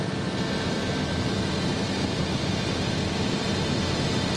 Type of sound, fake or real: real